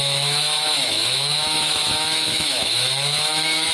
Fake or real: fake